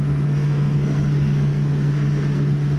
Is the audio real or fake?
fake